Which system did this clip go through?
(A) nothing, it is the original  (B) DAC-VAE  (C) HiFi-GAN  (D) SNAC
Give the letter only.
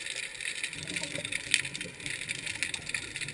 A